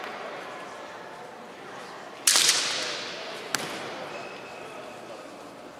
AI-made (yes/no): no